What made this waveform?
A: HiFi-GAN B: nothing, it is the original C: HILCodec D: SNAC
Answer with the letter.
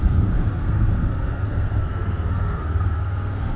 D